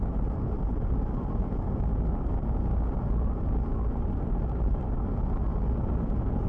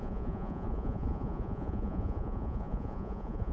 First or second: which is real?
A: first